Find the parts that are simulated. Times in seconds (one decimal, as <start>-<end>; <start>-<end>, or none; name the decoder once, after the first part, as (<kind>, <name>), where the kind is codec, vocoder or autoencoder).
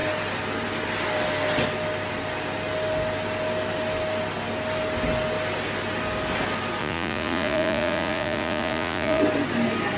6.8-9.2 (vocoder, Vocos)